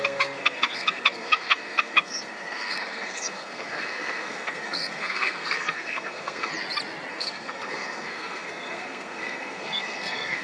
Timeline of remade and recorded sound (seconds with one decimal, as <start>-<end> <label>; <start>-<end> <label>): 0.0-6.5 remade; 6.5-7.1 recorded; 7.1-10.4 remade